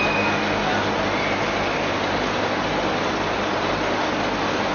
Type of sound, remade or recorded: recorded